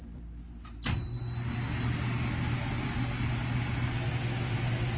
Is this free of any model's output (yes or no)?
yes